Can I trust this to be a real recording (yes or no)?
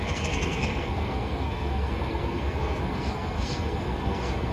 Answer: no